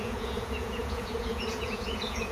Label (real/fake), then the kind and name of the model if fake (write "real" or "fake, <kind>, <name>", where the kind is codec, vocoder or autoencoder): fake, vocoder, Vocos